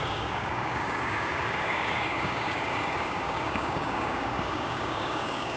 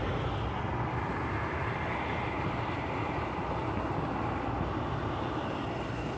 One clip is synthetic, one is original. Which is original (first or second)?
second